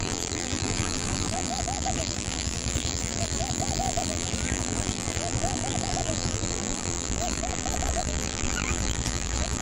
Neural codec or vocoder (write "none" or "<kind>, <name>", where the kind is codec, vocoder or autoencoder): vocoder, BigVGAN v2